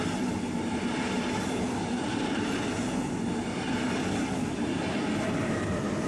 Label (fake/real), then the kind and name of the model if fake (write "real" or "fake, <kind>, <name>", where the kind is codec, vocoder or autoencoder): real